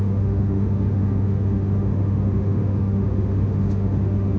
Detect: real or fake fake